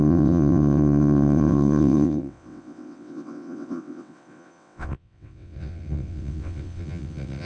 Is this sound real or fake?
fake